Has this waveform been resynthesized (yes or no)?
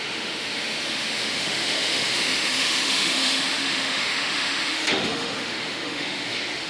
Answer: yes